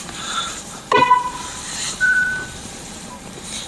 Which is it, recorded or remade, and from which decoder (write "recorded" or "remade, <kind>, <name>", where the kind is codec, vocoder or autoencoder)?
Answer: remade, vocoder, BigVGAN v2